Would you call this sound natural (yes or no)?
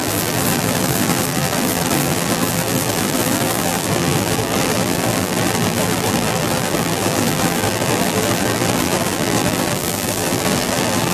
no